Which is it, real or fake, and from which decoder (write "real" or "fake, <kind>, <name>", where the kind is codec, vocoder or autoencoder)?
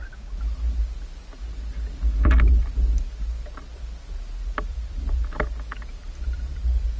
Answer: real